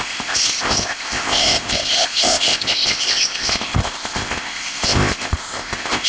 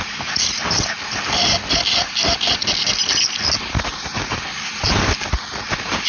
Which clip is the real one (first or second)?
second